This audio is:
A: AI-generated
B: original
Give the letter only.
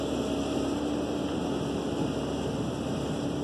B